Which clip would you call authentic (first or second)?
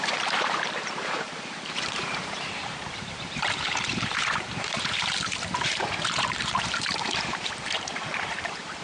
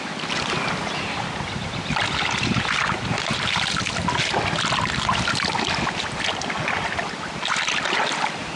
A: second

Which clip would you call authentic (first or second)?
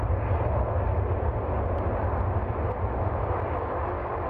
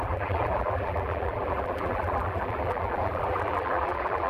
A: first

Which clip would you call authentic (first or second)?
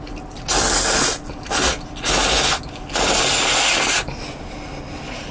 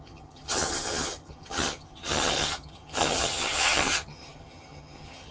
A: first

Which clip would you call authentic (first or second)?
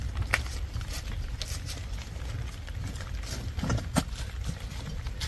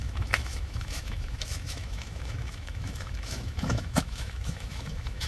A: first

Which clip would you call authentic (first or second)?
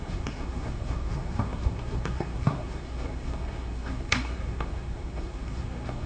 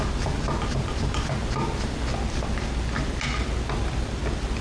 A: second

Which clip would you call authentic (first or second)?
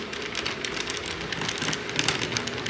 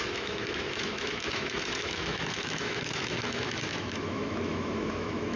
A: first